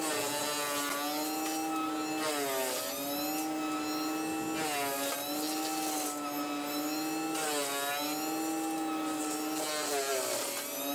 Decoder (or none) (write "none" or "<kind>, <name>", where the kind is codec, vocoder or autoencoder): none